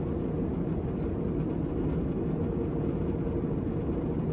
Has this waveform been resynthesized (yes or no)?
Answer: no